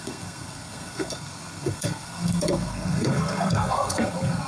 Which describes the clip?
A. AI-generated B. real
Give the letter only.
A